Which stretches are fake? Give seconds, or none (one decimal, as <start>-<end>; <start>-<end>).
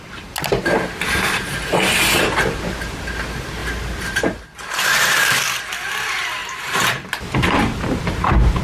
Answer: 3.6-5.4; 6.4-8.6